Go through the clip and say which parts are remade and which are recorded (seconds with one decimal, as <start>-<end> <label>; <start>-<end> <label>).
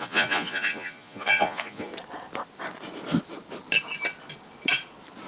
0.0-1.9 remade; 1.9-5.3 recorded